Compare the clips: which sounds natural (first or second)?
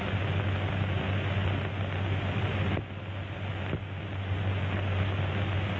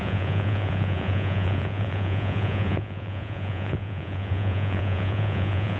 first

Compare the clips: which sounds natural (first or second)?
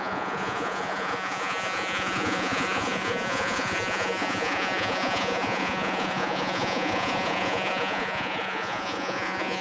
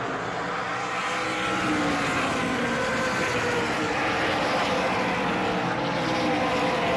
second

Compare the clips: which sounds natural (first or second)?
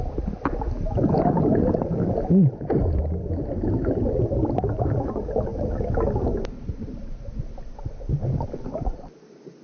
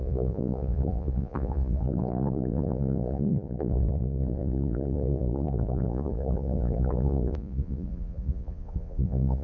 first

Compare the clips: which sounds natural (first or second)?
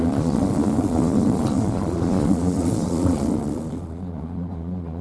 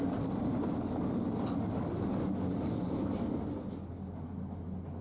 second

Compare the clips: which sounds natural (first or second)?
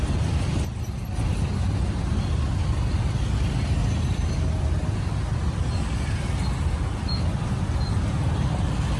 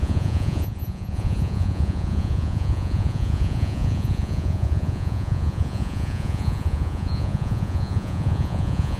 first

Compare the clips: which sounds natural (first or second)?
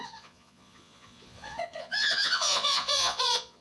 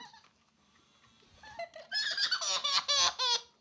second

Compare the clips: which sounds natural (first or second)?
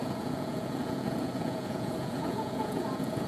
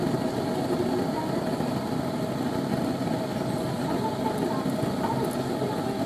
second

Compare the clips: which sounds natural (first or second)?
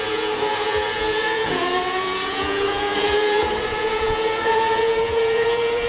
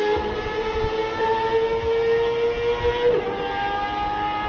second